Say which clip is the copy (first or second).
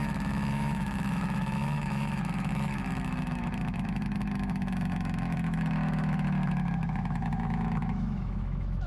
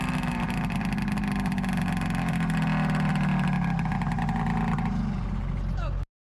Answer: first